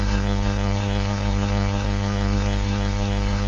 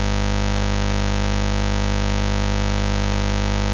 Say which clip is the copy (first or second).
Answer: first